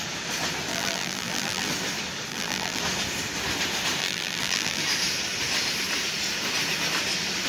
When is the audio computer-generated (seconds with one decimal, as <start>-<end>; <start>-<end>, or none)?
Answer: 0.7-1.7; 2.3-2.8; 4.0-4.8

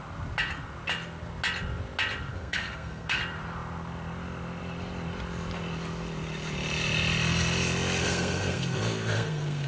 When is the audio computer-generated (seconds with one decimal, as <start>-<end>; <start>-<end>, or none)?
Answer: 2.3-3.2; 8.0-9.7

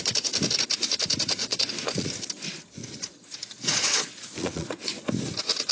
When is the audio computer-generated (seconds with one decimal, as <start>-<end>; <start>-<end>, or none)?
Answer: 1.4-2.1; 2.8-4.8

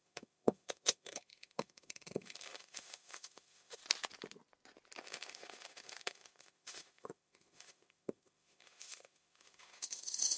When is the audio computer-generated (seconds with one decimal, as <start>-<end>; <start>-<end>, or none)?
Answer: 0.0-3.8; 5.0-10.4

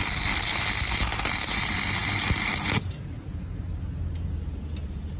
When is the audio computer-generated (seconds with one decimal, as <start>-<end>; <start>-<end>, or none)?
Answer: none